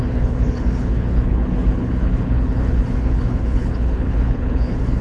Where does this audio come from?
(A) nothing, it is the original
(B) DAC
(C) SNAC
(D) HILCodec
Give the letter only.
D